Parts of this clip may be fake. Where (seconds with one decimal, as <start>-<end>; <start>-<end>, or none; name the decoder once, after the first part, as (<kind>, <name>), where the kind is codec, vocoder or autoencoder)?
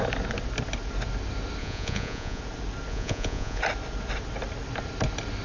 1.6-2.4 (vocoder, Vocos); 2.9-3.6